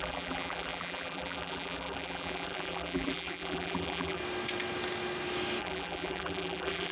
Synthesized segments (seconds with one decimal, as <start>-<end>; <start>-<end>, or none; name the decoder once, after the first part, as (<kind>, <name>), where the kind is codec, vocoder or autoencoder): 0.0-4.2 (vocoder, BigVGAN v2); 5.6-6.9